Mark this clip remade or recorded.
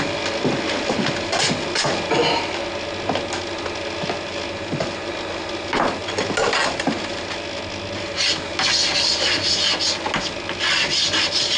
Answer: recorded